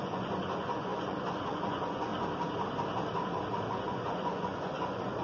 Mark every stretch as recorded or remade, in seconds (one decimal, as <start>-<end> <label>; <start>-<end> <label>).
0.0-2.1 remade; 2.1-3.7 recorded; 3.7-5.2 remade

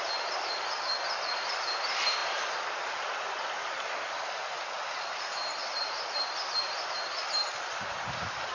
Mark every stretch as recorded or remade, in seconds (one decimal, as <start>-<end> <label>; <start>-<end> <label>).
0.0-8.5 recorded

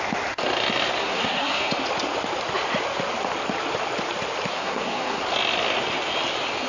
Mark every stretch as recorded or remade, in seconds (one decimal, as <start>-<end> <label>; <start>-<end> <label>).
0.0-1.0 recorded; 1.0-1.7 remade; 1.7-4.5 recorded; 4.5-5.2 remade; 5.2-6.7 recorded

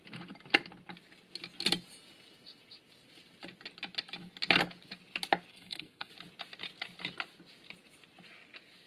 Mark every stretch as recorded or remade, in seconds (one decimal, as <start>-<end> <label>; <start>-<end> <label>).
0.0-5.5 recorded; 5.5-6.1 remade; 6.1-8.9 recorded

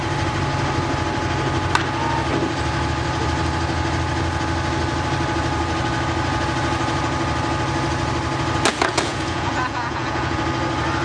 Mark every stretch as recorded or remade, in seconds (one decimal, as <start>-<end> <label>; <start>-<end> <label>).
0.0-8.7 recorded; 8.7-10.4 remade; 10.4-11.0 recorded

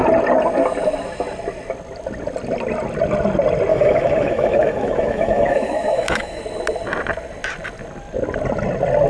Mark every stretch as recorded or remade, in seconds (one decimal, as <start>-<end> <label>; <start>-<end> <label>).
0.0-3.7 recorded; 3.7-6.4 remade; 6.4-9.1 recorded

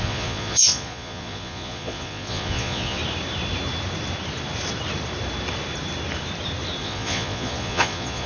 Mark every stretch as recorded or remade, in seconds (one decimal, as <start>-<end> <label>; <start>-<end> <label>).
0.0-3.0 remade; 3.0-6.8 recorded; 6.8-8.3 remade